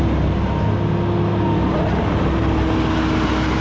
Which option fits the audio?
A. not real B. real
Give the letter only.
B